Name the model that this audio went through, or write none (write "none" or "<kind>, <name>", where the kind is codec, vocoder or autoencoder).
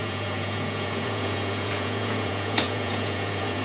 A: vocoder, Vocos